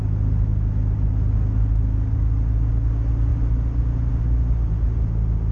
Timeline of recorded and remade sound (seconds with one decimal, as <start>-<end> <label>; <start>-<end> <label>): 0.0-5.5 recorded